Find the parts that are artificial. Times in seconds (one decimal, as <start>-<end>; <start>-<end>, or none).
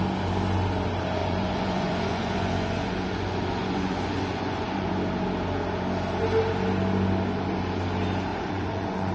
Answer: 1.2-4.9; 8.3-9.1